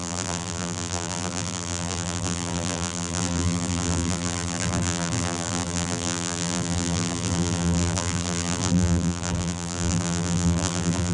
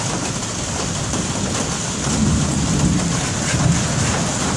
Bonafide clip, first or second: second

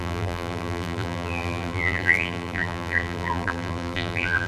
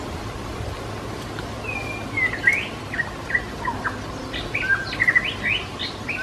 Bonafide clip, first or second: second